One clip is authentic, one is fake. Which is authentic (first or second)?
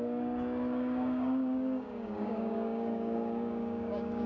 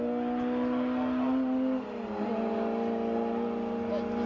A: second